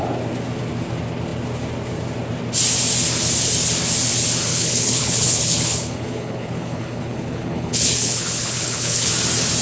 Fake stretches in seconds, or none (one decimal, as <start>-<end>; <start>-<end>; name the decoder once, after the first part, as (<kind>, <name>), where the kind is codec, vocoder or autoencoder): 4.5-9.1 (codec, HILCodec)